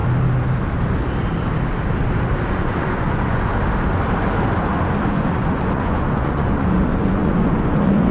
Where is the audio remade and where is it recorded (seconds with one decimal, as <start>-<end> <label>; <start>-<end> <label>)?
0.0-2.5 recorded; 2.5-3.5 remade; 3.5-5.1 recorded; 5.1-8.1 remade